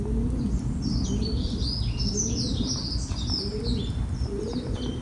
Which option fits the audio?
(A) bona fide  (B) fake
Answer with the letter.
A